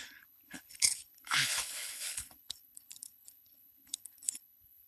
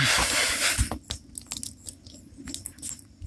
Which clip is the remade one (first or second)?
first